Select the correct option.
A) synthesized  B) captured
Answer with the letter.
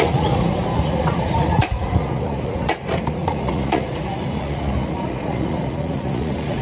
A